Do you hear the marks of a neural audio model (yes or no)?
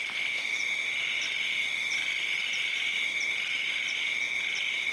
no